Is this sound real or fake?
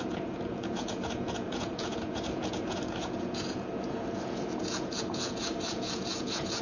fake